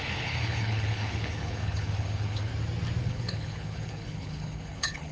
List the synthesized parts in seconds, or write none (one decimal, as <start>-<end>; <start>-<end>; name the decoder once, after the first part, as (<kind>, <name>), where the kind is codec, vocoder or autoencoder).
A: 0.0-2.5 (codec, HILCodec); 3.0-5.1